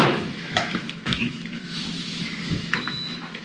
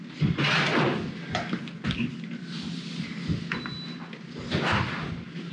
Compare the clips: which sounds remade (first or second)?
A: first